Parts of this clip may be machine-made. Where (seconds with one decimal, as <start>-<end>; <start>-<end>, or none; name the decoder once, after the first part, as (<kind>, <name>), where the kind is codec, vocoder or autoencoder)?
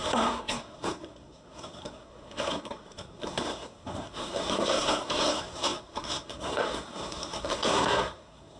0.0-8.6 (codec, SNAC)